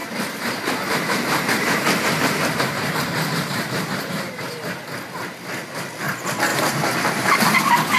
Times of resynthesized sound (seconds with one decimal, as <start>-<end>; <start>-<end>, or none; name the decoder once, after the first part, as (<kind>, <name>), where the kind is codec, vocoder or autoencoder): 0.0-4.8 (vocoder, BigVGAN v2); 6.5-7.6